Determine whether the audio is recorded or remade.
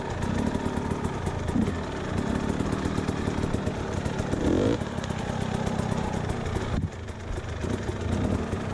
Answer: recorded